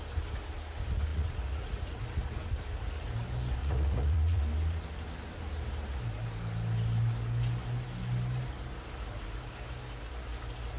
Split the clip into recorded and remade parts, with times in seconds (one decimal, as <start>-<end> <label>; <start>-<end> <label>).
0.0-1.1 recorded; 1.1-2.0 remade; 2.0-3.6 recorded; 3.6-4.4 remade; 4.4-10.8 recorded